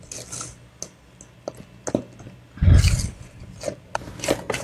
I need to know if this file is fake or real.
real